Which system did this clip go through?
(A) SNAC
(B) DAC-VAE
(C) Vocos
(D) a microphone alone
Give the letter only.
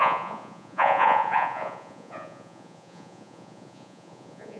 C